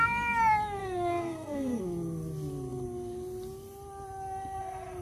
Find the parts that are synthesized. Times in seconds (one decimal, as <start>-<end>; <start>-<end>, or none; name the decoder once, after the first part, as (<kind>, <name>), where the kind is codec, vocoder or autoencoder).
0.8-1.8 (codec, SNAC)